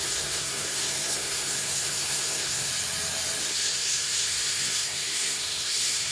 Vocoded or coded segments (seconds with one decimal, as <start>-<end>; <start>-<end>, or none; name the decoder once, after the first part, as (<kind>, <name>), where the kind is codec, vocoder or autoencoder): 0.0-2.7 (codec, SNAC); 3.4-6.1